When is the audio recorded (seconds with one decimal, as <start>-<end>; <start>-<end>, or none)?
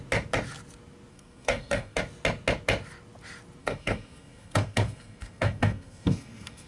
0.0-1.1; 2.0-3.6